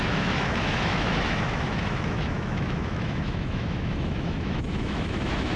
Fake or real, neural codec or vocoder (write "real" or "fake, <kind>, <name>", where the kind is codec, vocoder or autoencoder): fake, autoencoder, DAC-VAE